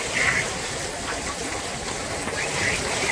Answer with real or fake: real